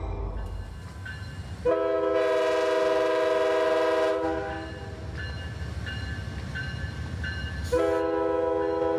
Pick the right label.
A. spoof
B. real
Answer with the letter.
B